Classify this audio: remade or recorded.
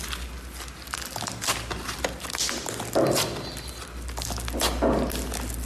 recorded